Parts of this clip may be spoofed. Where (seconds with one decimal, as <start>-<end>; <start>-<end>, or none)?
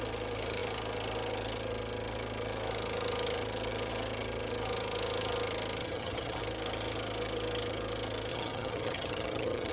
5.8-6.4; 8.3-9.7